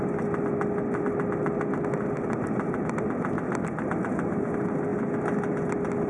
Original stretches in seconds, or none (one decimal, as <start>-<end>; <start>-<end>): 0.0-6.1